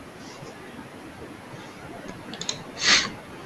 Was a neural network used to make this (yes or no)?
no